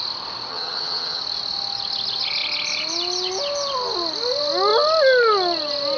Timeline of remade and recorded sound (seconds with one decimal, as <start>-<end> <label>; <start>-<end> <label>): 0.0-0.5 recorded; 0.5-1.2 remade; 1.2-6.0 recorded